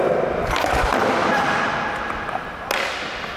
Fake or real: real